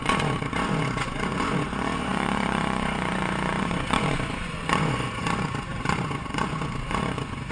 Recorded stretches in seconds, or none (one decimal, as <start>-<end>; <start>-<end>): none